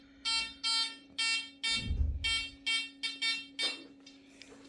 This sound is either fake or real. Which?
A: real